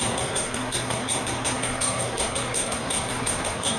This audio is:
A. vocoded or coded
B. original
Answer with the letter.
A